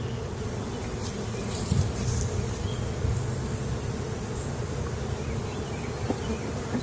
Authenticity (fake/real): real